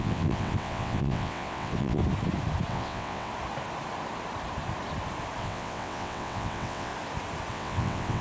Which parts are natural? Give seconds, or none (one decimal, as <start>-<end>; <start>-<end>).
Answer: 2.0-2.7; 3.3-5.4; 6.9-7.5